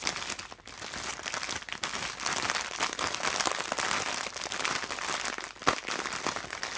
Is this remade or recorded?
recorded